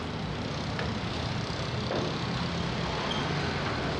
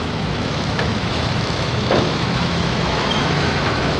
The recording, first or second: first